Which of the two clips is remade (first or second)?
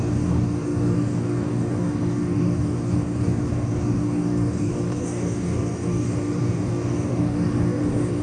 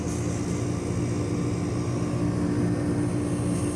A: first